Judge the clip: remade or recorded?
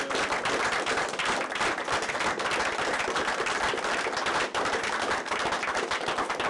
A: recorded